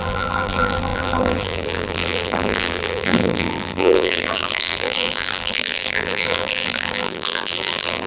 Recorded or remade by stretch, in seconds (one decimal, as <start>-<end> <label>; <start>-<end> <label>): 0.0-8.1 remade